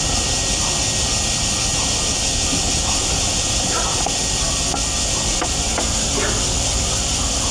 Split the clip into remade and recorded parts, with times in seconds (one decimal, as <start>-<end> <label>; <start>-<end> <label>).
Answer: 0.0-1.7 remade; 1.7-3.5 recorded; 3.5-7.5 remade

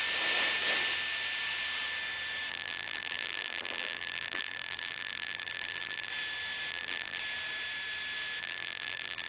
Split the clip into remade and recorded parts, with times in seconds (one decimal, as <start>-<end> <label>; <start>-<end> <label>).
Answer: 0.0-2.5 recorded; 2.5-6.1 remade; 6.1-6.7 recorded; 6.7-7.2 remade; 7.2-8.4 recorded; 8.4-9.3 remade

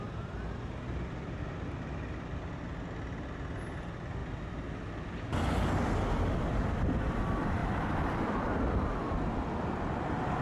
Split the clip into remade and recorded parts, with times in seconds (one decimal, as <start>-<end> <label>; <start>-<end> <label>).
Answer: 0.0-7.6 recorded; 7.6-10.4 remade

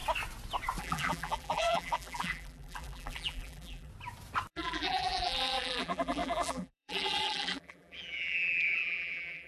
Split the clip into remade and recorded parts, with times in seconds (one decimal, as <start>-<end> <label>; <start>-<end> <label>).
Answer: 0.0-0.8 recorded; 0.8-3.9 remade; 3.9-4.5 recorded; 4.5-9.5 remade

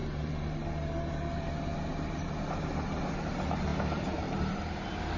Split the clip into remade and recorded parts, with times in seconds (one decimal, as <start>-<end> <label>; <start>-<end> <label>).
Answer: 0.0-5.2 remade

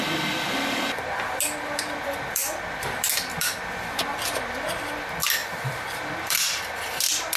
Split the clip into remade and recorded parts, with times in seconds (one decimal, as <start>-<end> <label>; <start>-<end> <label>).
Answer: 0.0-7.4 remade

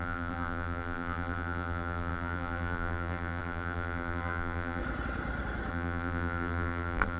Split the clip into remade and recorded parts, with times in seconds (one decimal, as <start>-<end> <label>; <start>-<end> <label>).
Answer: 0.0-4.8 remade; 4.8-5.7 recorded; 5.7-7.2 remade

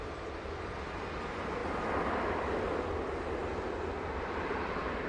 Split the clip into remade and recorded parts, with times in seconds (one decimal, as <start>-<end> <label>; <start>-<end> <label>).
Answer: 0.0-5.1 recorded